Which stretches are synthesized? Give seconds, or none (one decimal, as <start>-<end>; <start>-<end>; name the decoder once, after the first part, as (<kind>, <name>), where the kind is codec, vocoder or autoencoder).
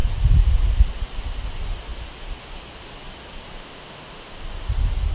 3.6-4.3 (autoencoder, DAC-VAE)